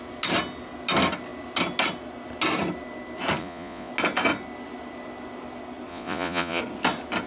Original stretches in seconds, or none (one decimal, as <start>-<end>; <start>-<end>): 0.0-3.4; 3.9-5.9; 6.6-7.3